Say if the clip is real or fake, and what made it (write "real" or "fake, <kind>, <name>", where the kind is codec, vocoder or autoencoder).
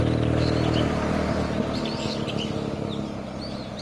real